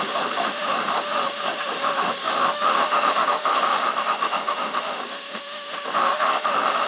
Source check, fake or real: fake